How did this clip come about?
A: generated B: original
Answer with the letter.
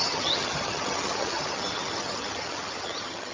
A